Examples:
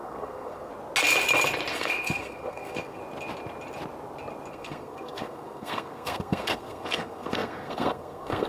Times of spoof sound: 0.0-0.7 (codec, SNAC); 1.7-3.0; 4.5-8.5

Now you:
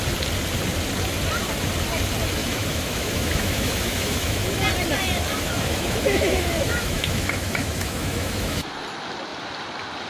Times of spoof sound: 2.4-4.6 (autoencoder, DAC-VAE); 5.3-8.7